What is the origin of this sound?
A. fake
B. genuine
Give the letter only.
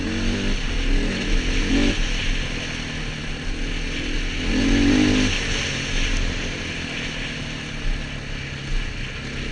B